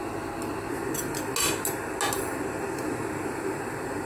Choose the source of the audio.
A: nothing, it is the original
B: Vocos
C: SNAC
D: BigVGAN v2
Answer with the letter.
A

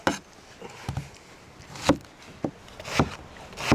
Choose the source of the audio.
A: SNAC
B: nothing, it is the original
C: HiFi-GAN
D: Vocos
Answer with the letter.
B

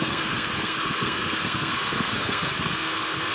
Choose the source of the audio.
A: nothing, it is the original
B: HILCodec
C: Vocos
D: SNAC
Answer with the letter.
D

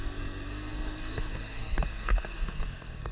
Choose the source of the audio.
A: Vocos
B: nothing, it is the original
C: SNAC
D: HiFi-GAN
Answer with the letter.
C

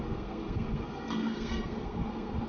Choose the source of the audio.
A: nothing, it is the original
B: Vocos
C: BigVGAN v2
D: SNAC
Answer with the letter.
D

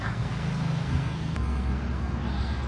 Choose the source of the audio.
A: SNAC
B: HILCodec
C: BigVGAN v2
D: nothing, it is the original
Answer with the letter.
A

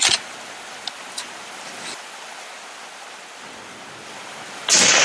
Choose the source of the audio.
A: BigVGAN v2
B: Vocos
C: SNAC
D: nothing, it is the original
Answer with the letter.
D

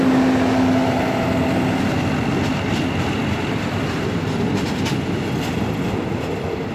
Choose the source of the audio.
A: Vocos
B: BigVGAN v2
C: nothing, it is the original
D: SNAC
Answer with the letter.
C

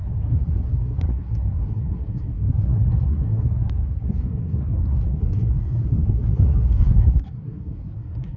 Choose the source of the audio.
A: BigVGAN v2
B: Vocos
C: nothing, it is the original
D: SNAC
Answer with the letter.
D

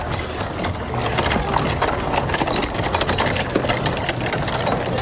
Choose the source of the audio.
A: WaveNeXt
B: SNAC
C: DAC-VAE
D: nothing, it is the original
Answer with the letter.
D